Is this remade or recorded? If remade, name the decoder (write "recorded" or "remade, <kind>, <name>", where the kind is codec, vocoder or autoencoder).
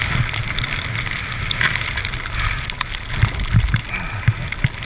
recorded